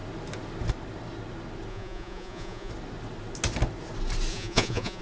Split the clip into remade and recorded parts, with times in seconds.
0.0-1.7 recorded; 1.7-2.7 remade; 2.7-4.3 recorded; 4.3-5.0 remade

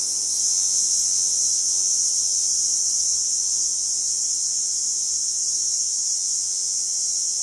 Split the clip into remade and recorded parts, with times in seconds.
0.0-7.4 remade

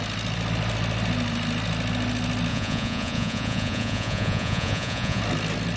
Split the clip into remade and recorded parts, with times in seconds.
0.0-2.5 recorded; 2.5-5.2 remade; 5.2-5.8 recorded

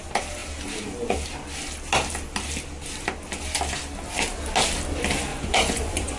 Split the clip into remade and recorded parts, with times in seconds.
0.0-5.3 recorded; 5.3-6.2 remade

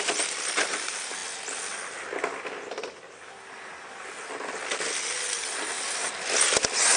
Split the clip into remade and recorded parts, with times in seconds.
0.0-7.0 recorded

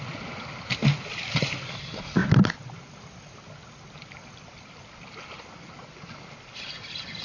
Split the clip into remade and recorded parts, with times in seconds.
0.0-7.2 recorded

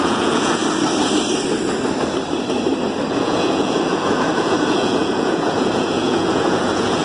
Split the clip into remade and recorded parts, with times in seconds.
0.0-0.6 remade; 0.6-3.1 recorded; 3.1-7.0 remade

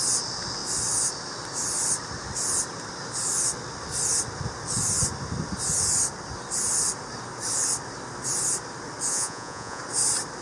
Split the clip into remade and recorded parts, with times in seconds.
0.0-9.1 recorded; 9.1-9.8 remade; 9.8-10.4 recorded